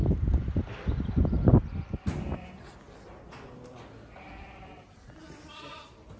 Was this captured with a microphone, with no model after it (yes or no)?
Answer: yes